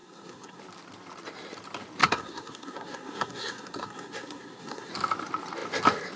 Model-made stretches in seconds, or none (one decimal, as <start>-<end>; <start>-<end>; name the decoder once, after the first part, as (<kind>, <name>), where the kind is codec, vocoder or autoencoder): 0.0-0.6 (codec, SNAC); 2.0-4.9